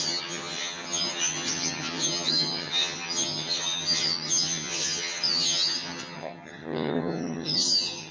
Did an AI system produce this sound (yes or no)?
yes